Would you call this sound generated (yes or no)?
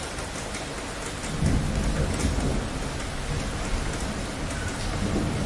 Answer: no